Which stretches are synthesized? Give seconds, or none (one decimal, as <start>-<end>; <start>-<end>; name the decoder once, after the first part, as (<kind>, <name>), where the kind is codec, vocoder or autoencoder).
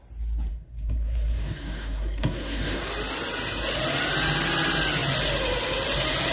0.5-2.8 (codec, SNAC)